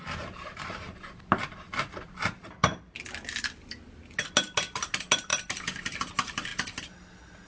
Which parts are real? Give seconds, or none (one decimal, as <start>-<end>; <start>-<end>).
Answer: 0.0-7.5